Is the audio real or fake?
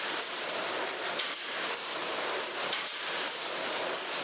fake